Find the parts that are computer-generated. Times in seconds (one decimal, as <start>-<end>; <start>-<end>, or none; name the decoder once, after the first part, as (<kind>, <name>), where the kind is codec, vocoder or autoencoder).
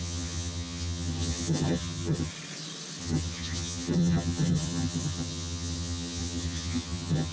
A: 0.0-2.3 (vocoder, HiFi-GAN); 3.0-7.3